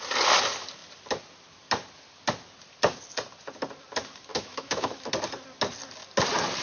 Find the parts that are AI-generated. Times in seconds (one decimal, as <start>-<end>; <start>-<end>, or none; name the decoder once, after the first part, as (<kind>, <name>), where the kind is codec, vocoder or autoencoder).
4.3-5.1 (autoencoder, DAC-VAE)